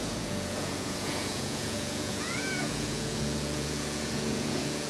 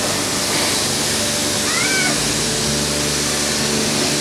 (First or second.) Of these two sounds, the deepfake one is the first